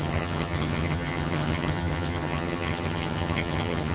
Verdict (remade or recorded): remade